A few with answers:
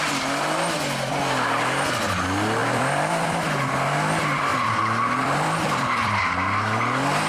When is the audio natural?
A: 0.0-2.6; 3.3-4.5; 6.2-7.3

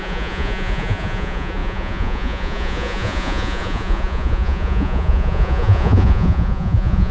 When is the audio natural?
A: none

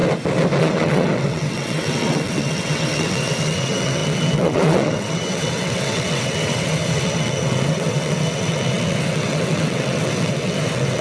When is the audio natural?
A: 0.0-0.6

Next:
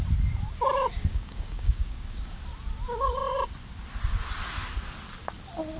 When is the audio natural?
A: 0.0-0.9; 2.4-5.8

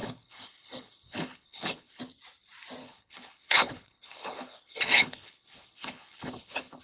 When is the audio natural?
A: 2.0-2.8

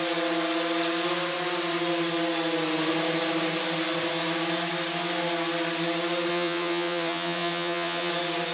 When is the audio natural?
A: 0.0-6.3; 8.1-8.5

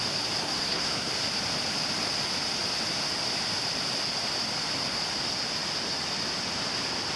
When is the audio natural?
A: 0.0-0.4; 1.1-7.2

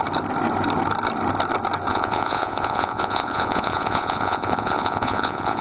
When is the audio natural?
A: 0.0-1.9